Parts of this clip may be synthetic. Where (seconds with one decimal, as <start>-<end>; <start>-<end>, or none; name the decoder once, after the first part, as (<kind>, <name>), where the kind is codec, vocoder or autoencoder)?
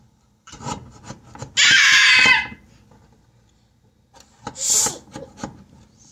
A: 0.0-0.8 (vocoder, BigVGAN v2); 4.5-6.1